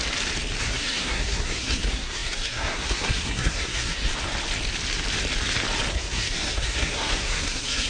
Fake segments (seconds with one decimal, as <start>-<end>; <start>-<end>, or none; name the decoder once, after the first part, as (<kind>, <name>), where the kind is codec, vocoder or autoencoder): 0.6-4.1 (codec, SNAC); 5.9-7.9